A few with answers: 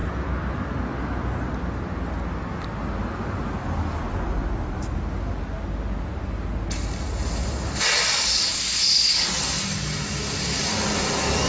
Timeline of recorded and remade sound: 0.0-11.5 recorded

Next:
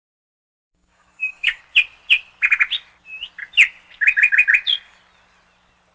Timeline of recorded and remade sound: 0.0-0.6 recorded; 0.6-1.6 remade; 1.6-5.9 recorded